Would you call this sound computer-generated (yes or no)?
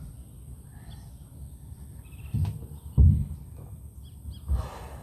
no